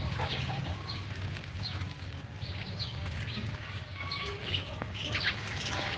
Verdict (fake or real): fake